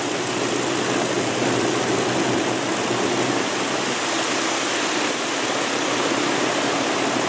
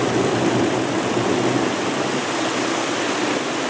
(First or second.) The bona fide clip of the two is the first